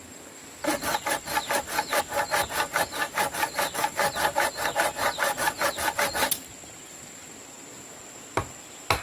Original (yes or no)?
yes